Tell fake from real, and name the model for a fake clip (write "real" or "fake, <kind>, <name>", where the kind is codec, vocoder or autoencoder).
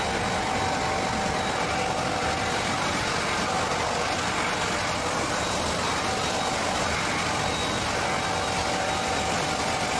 real